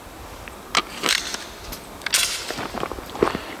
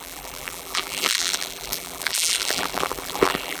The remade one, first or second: second